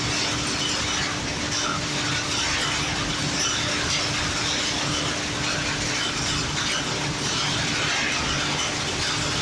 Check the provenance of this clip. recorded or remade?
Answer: recorded